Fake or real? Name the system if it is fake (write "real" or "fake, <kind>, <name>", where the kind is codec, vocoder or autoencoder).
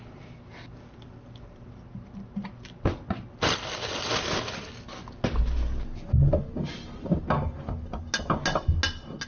real